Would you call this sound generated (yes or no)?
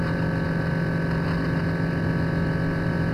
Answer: no